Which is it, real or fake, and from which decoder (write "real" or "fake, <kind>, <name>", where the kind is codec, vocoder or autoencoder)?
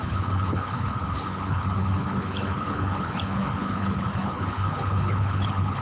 fake, codec, HILCodec